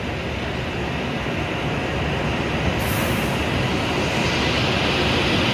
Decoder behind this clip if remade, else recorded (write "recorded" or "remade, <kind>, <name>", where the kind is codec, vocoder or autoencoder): recorded